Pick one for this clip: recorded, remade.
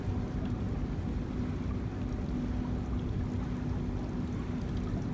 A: recorded